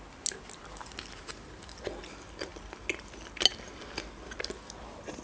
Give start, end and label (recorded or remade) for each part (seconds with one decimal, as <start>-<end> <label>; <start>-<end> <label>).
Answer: 0.0-5.2 recorded